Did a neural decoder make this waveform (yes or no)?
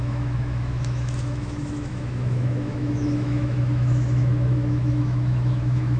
yes